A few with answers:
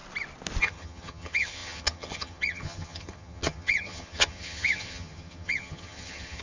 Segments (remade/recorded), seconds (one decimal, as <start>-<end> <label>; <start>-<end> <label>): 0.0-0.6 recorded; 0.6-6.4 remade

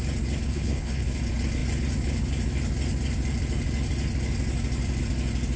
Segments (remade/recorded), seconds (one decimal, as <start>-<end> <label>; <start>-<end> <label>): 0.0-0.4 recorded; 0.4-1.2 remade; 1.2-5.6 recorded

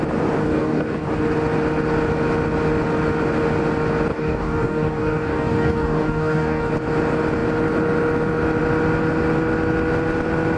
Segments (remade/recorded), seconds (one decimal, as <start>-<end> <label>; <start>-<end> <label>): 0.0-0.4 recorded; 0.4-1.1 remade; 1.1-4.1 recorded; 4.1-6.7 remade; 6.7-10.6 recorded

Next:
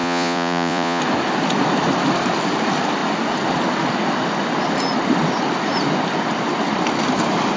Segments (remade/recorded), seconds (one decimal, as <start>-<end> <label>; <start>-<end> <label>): 0.0-1.0 remade; 1.0-7.6 recorded

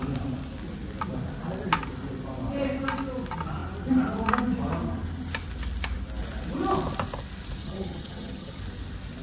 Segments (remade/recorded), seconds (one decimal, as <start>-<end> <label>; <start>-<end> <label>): 0.0-7.6 recorded; 7.6-8.6 remade; 8.6-9.2 recorded